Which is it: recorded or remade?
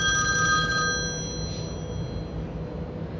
recorded